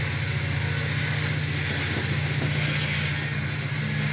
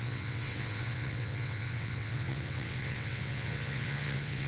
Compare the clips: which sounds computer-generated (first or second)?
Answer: second